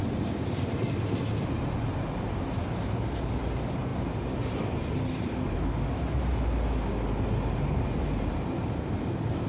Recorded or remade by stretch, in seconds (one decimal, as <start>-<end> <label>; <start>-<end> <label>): 0.0-9.5 recorded